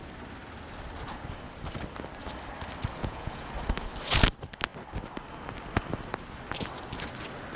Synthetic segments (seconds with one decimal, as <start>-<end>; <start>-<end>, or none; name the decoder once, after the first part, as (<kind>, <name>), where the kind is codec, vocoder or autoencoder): 3.0-3.5 (vocoder, Vocos)